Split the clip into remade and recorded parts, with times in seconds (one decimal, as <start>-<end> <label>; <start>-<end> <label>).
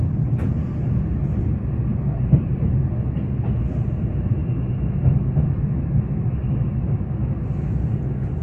0.0-4.4 recorded; 4.4-7.7 remade; 7.7-8.4 recorded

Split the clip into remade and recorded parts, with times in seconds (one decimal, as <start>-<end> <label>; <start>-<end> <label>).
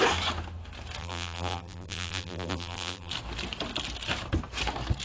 0.0-1.0 recorded; 1.0-3.1 remade; 3.1-5.0 recorded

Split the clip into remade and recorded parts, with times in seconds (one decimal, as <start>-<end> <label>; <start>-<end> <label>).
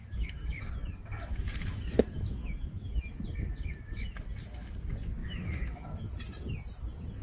0.0-0.7 remade; 0.7-1.3 recorded; 1.3-3.1 remade; 3.1-5.2 recorded; 5.2-6.1 remade; 6.1-7.2 recorded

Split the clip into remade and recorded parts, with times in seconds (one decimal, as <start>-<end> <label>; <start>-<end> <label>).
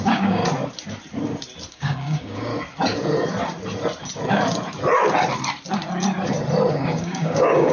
0.0-0.4 remade; 0.4-1.7 recorded; 1.7-2.5 remade; 2.5-6.7 recorded; 6.7-7.7 remade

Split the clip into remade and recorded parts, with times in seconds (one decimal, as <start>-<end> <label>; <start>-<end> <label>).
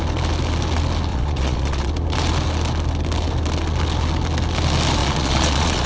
0.0-1.1 recorded; 1.1-1.9 remade; 1.9-5.0 recorded; 5.0-5.9 remade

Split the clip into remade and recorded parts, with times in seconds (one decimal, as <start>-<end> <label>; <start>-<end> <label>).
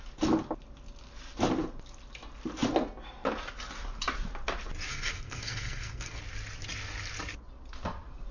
0.0-4.9 recorded; 4.9-6.2 remade; 6.2-8.3 recorded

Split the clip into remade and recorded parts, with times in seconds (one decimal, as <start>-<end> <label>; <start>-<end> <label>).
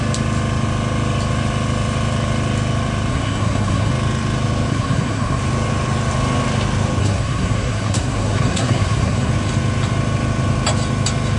0.0-3.1 recorded; 3.1-3.9 remade; 3.9-4.7 recorded; 4.7-5.4 remade; 5.4-7.0 recorded; 7.0-9.3 remade; 9.3-11.4 recorded